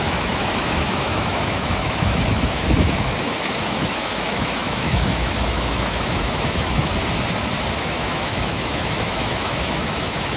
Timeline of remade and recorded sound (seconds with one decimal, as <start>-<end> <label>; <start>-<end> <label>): 0.0-6.9 remade; 6.9-7.7 recorded; 7.7-10.4 remade